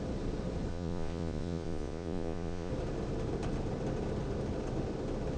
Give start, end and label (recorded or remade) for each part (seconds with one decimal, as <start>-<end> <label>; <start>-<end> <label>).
0.0-0.7 recorded; 0.7-2.7 remade; 2.7-5.4 recorded